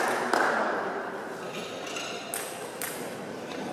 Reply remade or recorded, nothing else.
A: recorded